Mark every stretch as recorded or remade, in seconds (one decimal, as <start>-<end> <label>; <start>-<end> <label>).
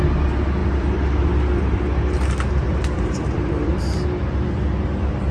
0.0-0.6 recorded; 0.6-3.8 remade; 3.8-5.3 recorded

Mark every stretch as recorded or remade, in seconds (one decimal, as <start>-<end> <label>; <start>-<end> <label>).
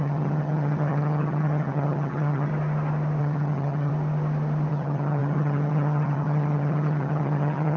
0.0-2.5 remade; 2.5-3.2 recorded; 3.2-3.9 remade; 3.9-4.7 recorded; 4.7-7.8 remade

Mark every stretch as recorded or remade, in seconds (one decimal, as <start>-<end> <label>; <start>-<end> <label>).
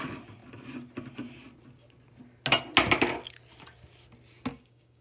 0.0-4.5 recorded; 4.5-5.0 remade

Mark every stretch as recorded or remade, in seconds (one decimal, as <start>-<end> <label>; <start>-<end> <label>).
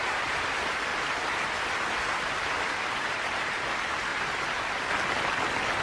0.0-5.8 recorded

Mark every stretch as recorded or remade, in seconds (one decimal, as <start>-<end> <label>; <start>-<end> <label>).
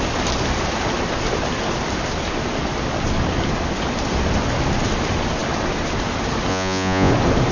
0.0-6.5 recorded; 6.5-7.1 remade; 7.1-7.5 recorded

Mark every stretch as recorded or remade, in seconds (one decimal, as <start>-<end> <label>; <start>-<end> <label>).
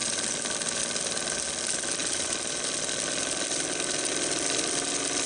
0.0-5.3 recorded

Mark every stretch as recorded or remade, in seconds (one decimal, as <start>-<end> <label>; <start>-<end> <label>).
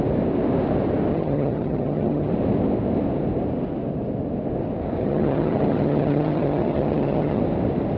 0.0-1.1 recorded; 1.1-2.3 remade; 2.3-5.0 recorded; 5.0-7.4 remade; 7.4-8.0 recorded